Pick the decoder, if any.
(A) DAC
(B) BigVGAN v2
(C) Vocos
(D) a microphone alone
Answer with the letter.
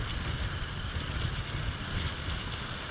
D